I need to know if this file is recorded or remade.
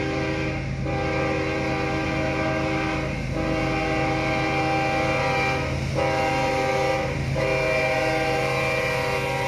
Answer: recorded